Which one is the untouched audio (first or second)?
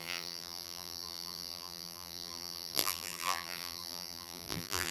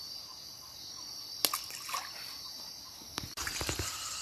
second